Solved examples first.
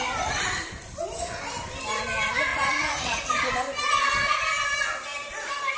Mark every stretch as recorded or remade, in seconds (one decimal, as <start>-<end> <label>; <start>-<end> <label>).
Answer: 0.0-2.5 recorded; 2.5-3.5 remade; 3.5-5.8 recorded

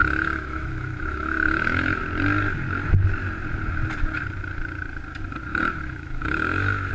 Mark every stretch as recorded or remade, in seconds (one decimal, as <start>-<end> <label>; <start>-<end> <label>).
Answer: 0.0-2.0 remade; 2.0-5.5 recorded; 5.5-6.9 remade

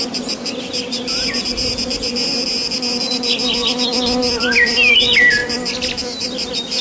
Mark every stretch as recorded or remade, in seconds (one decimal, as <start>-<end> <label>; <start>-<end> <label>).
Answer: 0.0-6.8 recorded